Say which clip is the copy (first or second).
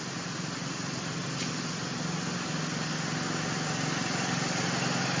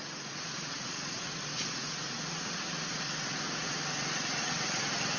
second